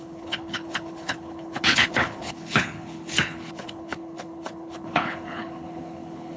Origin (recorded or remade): remade